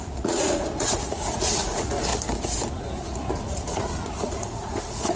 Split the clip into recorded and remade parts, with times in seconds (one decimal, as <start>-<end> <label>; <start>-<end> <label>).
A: 0.0-2.1 remade; 2.1-2.7 recorded; 2.7-5.2 remade